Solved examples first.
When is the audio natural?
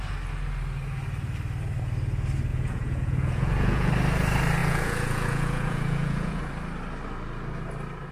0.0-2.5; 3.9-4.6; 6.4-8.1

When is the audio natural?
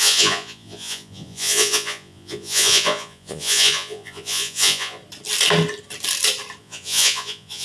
5.0-6.6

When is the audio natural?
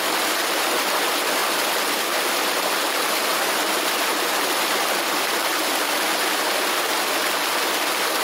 0.0-8.2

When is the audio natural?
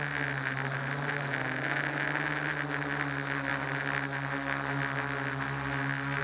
0.0-6.2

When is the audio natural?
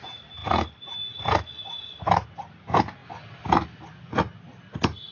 0.0-5.1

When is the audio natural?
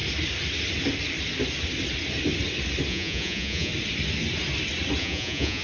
0.0-2.9; 3.7-5.0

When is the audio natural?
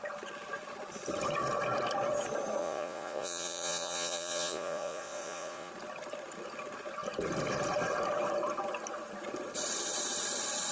0.0-2.6; 5.7-10.7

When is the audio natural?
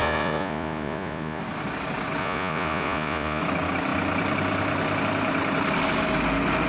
1.4-2.2; 3.4-6.7